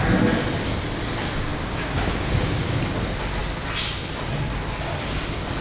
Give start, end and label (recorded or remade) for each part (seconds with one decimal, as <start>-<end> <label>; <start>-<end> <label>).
0.0-1.5 recorded; 1.5-2.8 remade; 2.8-5.6 recorded